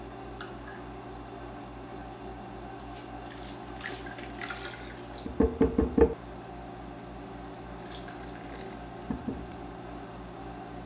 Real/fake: real